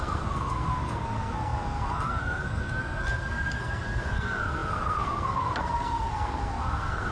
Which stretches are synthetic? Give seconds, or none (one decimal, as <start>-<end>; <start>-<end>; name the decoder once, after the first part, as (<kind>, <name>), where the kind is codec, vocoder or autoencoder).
0.0-7.1 (codec, SNAC)